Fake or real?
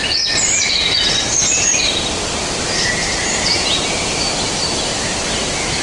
real